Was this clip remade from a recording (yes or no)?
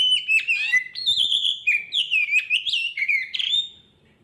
yes